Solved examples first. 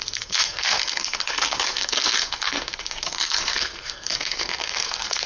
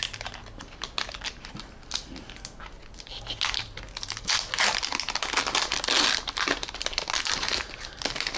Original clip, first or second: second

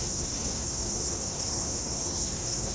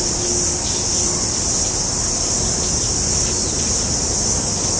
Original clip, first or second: second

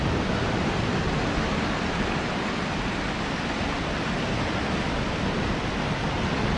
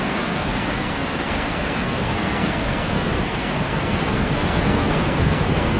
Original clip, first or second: first